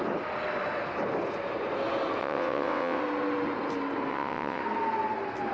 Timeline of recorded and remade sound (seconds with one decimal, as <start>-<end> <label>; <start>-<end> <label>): 0.0-2.2 recorded; 2.2-3.0 remade; 3.0-4.1 recorded; 4.1-4.6 remade; 4.6-5.5 recorded